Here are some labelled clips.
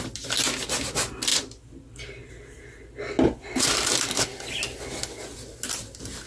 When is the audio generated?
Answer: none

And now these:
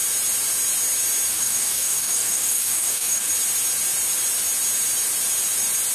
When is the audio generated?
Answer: 1.3-3.3 (codec, DAC)